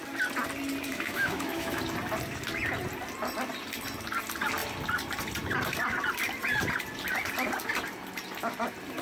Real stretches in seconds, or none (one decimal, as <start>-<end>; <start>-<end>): 0.0-0.9; 1.8-9.0